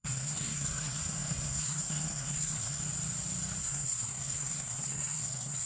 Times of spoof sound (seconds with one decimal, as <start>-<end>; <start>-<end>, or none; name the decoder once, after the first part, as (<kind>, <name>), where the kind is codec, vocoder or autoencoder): 0.0-2.8 (codec, SNAC); 3.6-5.7